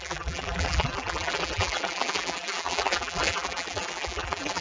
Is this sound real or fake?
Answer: fake